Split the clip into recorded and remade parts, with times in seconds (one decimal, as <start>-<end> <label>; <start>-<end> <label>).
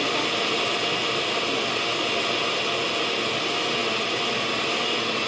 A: 0.0-5.3 recorded